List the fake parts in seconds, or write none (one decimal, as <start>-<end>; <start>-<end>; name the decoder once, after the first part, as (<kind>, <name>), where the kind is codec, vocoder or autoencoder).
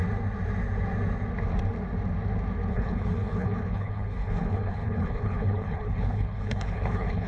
2.7-7.3 (codec, HILCodec)